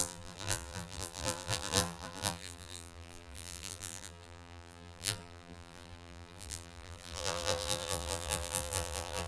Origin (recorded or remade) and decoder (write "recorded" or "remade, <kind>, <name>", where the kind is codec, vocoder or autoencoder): remade, vocoder, BigVGAN v2